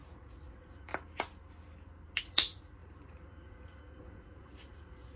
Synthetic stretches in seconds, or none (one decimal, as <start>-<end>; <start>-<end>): 0.0-0.9; 2.2-5.2